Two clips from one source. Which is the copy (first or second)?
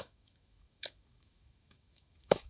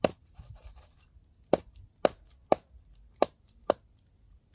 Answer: first